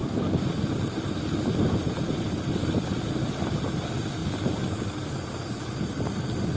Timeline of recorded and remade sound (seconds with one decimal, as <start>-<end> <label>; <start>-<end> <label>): 0.0-2.8 remade; 2.8-4.2 recorded; 4.2-6.1 remade; 6.1-6.6 recorded